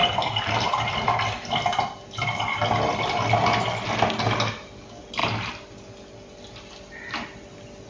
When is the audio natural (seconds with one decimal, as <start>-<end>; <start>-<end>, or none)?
0.0-7.9